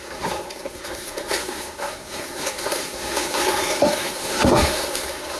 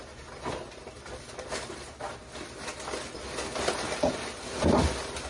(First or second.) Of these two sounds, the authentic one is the second